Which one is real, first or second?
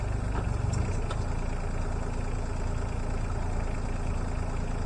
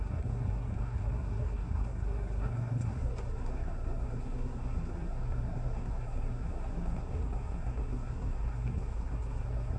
first